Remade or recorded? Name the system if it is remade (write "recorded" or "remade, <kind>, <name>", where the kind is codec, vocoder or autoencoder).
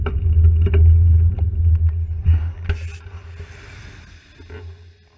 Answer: recorded